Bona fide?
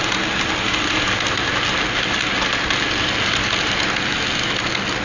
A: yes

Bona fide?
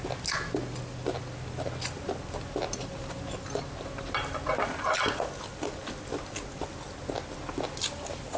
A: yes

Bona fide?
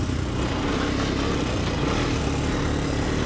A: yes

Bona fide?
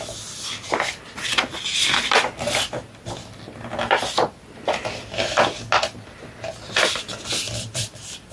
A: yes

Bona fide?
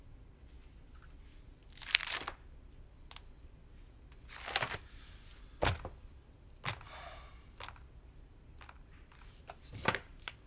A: yes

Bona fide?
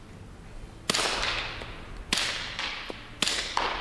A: yes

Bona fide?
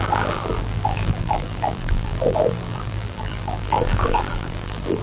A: no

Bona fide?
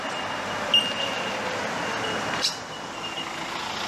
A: yes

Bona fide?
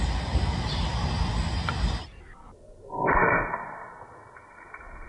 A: yes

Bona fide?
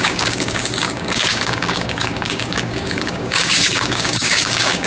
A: no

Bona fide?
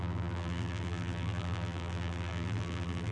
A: no